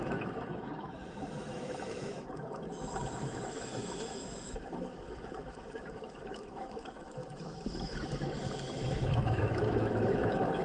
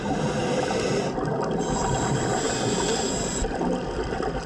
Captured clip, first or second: second